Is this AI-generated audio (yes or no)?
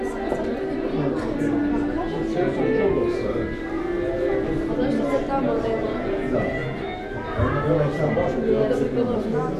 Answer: no